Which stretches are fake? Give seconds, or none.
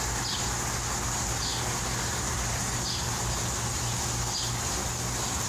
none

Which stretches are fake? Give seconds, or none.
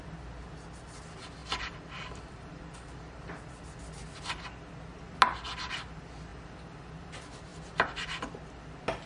1.4-3.4 (vocoder, BigVGAN v2); 7.5-8.3